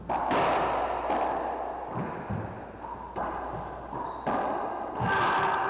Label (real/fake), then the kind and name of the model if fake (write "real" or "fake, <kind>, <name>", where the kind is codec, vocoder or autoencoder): real